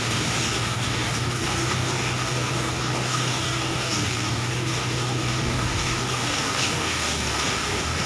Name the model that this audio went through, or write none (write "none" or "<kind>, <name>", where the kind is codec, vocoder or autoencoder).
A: codec, DAC